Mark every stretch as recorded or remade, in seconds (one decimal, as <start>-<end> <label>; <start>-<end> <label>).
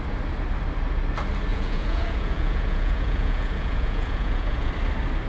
0.0-1.5 recorded; 1.5-4.7 remade; 4.7-5.3 recorded